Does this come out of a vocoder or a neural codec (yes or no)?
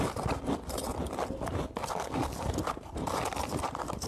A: no